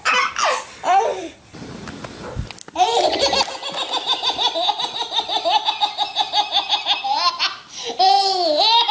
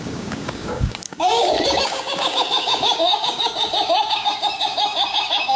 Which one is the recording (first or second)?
first